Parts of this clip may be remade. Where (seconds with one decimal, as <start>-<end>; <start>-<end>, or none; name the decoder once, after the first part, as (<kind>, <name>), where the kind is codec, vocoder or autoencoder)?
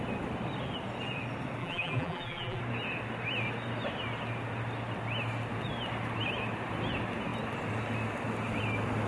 1.6-2.6 (vocoder, BigVGAN v2)